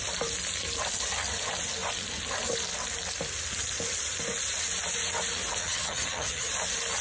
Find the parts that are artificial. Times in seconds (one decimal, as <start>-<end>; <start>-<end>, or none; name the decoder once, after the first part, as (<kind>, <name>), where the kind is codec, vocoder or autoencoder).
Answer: 5.6-6.5 (vocoder, HiFi-GAN)